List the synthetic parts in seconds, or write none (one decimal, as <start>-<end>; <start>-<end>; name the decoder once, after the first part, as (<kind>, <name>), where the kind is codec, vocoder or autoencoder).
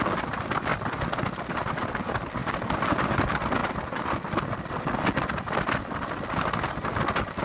none